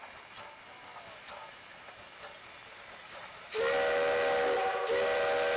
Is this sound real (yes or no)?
yes